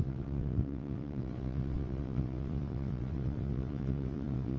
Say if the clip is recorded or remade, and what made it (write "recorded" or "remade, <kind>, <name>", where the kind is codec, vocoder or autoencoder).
remade, vocoder, WaveNeXt